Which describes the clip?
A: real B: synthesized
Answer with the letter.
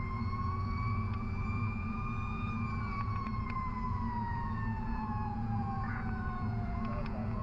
B